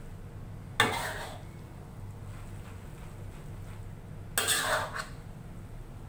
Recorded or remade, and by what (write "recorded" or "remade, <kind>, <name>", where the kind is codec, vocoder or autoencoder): recorded